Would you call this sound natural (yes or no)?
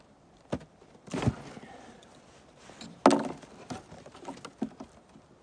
yes